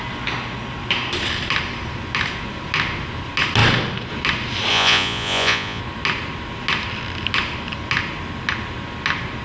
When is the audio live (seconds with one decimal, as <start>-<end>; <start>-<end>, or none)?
0.0-4.7; 5.8-9.4